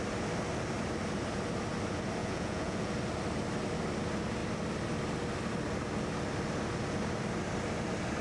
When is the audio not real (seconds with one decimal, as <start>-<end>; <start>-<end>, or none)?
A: 2.2-2.9